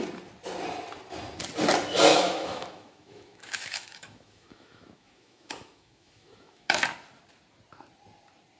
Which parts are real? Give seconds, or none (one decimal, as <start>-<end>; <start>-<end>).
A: 0.0-2.1; 6.8-8.6